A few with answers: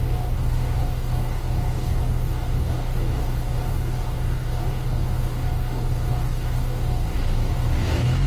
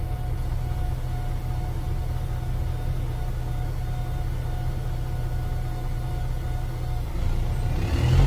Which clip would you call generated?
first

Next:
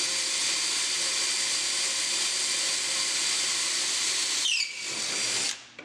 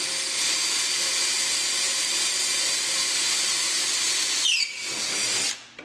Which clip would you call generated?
first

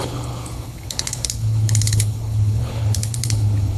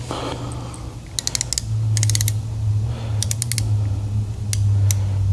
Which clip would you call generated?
first